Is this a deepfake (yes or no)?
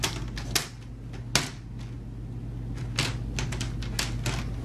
no